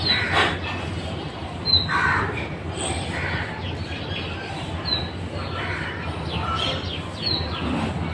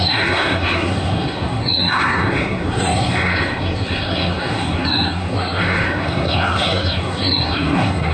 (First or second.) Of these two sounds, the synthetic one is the second